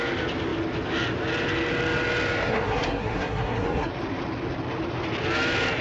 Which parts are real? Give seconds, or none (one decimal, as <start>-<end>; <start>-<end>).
0.0-2.4; 3.9-5.8